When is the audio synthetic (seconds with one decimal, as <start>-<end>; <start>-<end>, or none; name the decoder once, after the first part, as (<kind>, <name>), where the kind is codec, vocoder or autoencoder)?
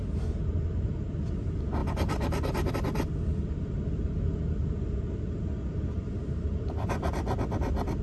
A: none